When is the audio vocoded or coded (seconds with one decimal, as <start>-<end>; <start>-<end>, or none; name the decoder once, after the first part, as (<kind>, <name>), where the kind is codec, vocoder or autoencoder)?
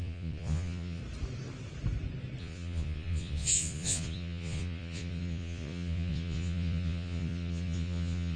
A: 0.0-1.0 (vocoder, Vocos); 2.4-8.4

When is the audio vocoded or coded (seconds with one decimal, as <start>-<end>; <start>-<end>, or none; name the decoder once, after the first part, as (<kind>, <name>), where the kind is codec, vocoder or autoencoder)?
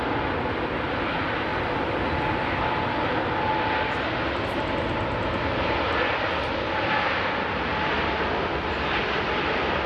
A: 1.5-2.3 (vocoder, BigVGAN v2)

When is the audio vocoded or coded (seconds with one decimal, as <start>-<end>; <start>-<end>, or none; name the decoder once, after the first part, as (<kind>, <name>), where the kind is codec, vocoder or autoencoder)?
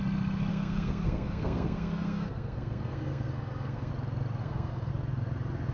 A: 0.5-3.9 (codec, SNAC); 4.4-4.9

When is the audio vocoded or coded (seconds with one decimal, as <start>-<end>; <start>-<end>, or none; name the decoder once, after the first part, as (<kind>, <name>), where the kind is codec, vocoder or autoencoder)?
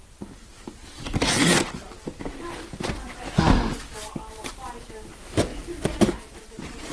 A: 5.5-6.9 (vocoder, BigVGAN v2)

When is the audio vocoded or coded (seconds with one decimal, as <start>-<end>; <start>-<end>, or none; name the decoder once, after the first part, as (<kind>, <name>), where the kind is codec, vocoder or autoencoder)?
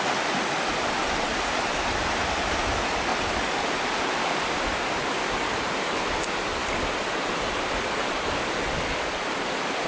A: 1.0-2.6 (vocoder, BigVGAN v2); 3.1-4.2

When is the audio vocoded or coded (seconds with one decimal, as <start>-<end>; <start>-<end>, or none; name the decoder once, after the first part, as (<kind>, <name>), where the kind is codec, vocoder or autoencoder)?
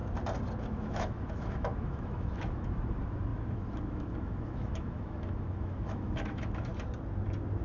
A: 0.6-6.7 (autoencoder, DAC-VAE)